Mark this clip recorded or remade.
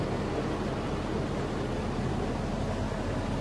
recorded